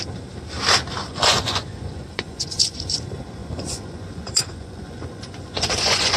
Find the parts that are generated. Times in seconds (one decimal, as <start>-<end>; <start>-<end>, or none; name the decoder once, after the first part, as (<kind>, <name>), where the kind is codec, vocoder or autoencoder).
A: 1.0-3.0 (vocoder, Vocos); 3.4-6.2